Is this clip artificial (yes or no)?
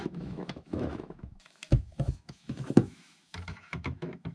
yes